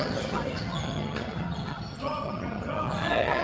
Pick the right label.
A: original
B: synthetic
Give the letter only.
B